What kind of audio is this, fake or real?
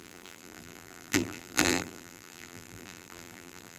fake